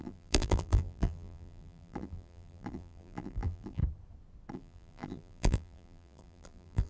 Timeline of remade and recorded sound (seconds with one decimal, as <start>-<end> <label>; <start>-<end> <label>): 0.0-3.8 remade; 3.8-4.5 recorded; 4.5-6.9 remade